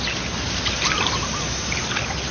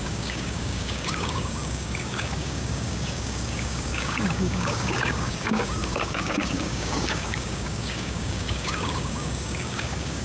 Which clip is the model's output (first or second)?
second